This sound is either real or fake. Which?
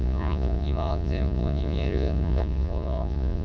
fake